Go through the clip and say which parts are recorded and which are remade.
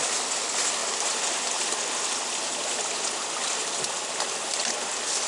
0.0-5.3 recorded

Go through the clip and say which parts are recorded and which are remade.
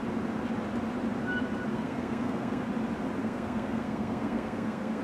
0.0-1.7 recorded; 1.7-2.7 remade; 2.7-3.2 recorded; 3.2-5.0 remade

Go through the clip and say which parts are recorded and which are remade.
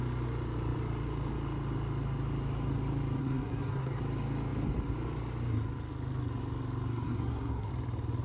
0.0-3.2 recorded; 3.2-4.0 remade; 4.0-6.9 recorded; 6.9-7.7 remade; 7.7-8.2 recorded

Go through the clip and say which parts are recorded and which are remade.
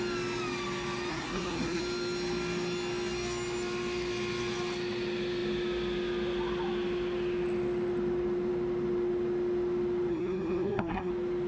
0.0-1.1 recorded; 1.1-1.8 remade; 1.8-10.1 recorded; 10.1-11.1 remade; 11.1-11.5 recorded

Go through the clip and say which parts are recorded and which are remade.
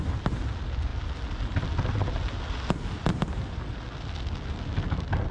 0.0-5.3 recorded